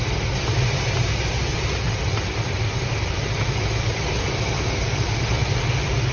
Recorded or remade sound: recorded